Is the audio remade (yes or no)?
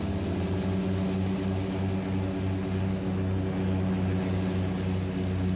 no